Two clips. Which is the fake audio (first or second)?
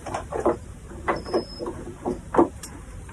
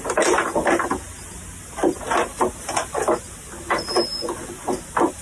first